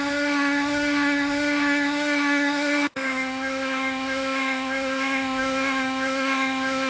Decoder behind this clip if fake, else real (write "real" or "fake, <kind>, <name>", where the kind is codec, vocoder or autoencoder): fake, autoencoder, DAC-VAE